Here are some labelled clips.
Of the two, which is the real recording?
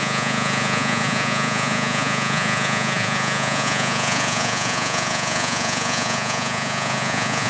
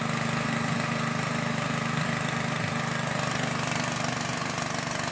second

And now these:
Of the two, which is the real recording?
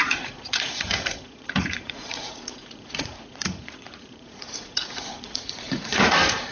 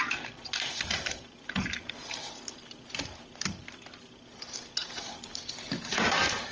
second